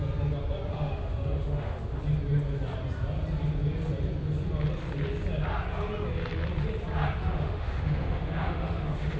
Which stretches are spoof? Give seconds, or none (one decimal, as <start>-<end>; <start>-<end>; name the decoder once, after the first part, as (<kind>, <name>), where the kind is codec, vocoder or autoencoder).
0.7-2.0 (autoencoder, DAC-VAE); 7.2-9.2